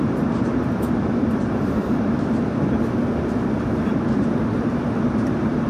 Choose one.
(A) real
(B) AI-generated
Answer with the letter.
B